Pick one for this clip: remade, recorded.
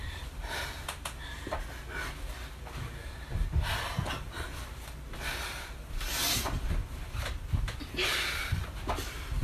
remade